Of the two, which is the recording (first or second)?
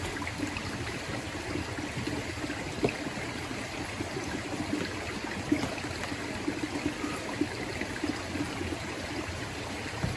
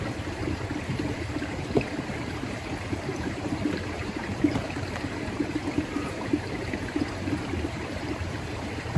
first